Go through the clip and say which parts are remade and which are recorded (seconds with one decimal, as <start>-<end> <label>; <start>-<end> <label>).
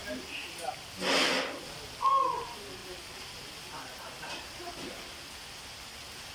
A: 0.0-0.9 remade; 0.9-2.8 recorded; 2.8-3.5 remade; 3.5-6.3 recorded